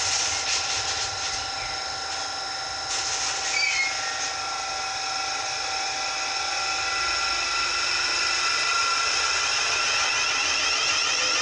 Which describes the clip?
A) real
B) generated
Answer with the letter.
A